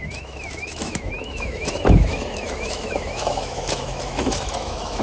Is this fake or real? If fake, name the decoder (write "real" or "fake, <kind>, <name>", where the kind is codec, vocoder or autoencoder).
fake, autoencoder, DAC-VAE